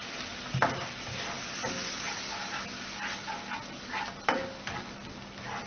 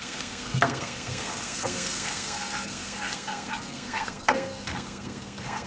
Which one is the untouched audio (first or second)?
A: first